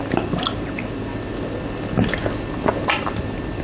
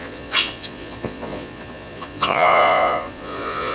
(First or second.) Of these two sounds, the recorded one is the first